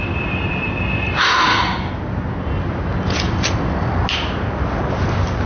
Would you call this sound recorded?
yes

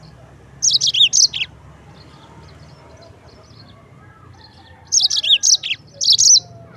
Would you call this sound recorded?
yes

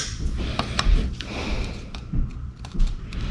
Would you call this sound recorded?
no